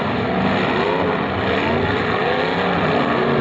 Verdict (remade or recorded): recorded